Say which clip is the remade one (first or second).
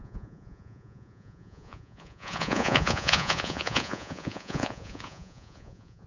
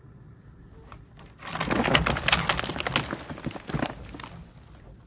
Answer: first